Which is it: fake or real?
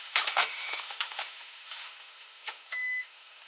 fake